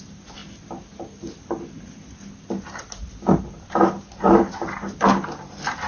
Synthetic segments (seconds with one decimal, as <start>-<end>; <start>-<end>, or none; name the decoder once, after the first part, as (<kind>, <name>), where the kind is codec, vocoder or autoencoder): none